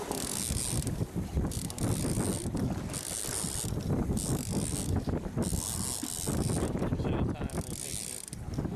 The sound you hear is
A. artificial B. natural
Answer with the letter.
B